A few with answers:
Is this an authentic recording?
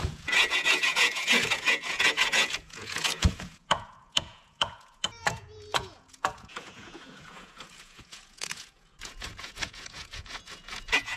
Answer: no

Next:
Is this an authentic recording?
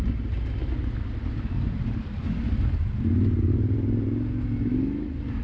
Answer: yes